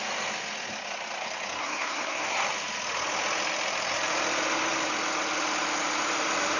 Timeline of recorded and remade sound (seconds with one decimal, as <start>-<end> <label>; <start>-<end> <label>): 0.0-1.6 recorded; 1.6-2.4 remade; 2.4-6.6 recorded